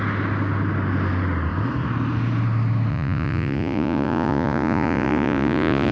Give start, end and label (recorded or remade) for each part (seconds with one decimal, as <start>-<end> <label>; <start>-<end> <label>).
0.0-2.9 recorded; 2.9-5.9 remade